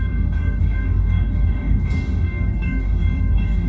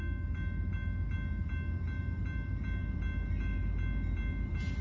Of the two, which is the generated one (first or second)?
first